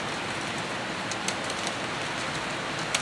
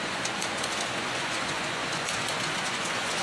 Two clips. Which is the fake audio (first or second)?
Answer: second